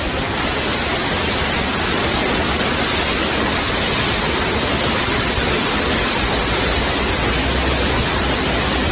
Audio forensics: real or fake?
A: real